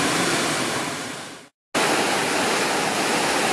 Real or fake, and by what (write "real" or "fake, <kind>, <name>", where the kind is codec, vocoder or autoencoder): real